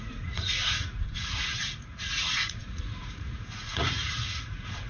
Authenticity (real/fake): fake